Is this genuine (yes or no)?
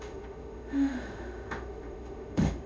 no